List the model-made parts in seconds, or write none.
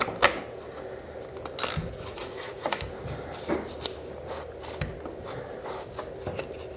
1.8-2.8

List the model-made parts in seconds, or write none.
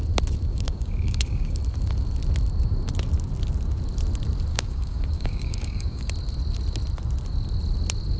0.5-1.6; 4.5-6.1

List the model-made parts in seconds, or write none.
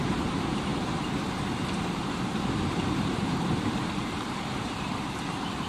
0.0-5.7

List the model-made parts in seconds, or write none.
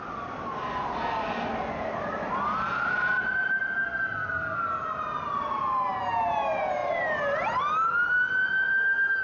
none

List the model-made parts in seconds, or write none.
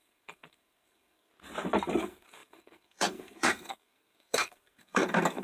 0.0-1.3; 2.0-5.4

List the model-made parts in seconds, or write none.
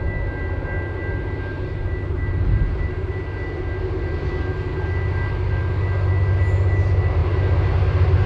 1.5-3.1; 7.2-8.3